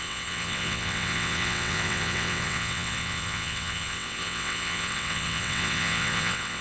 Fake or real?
fake